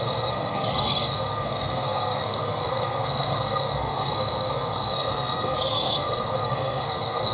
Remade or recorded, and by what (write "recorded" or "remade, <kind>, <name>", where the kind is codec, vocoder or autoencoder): remade, codec, SNAC